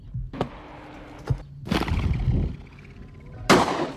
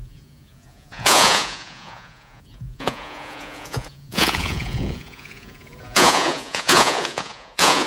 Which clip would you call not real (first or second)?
second